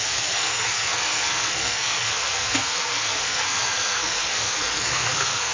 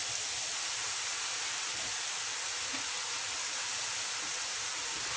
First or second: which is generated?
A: first